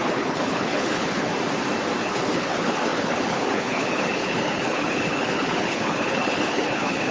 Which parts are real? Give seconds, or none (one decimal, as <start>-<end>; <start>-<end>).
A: 1.3-2.0